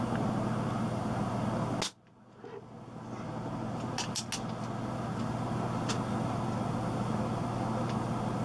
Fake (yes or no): no